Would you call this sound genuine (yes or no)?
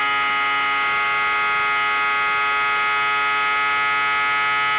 yes